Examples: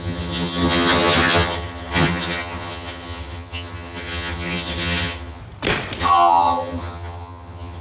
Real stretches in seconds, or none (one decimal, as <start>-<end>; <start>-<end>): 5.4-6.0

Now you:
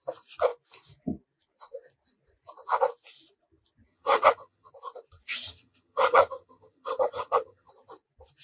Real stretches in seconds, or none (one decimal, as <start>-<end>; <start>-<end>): 0.0-3.9; 4.7-5.3; 7.7-8.4

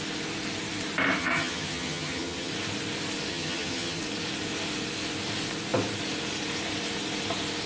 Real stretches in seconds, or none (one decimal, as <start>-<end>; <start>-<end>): 0.0-1.2; 2.5-3.3; 4.0-7.7

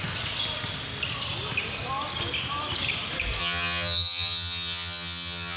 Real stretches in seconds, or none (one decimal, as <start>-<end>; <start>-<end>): 0.0-3.4

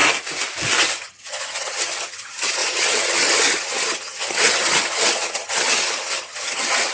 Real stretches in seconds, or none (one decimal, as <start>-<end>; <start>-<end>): 0.0-0.8

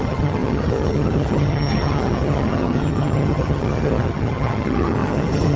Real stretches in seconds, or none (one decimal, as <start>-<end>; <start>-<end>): none

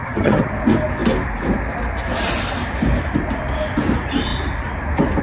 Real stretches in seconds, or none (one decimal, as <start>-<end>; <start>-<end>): 0.5-5.2